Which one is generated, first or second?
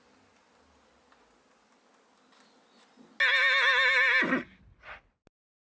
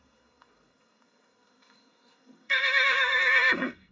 second